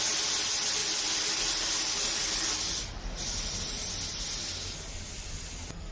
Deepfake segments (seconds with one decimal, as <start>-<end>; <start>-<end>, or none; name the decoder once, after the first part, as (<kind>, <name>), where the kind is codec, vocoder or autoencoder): 0.8-1.4 (vocoder, BigVGAN v2)